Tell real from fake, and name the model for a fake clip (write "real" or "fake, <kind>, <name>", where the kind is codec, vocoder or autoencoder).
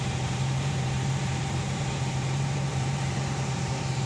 fake, vocoder, BigVGAN v2